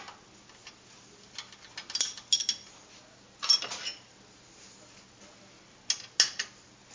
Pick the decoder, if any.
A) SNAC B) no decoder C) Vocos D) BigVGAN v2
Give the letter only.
B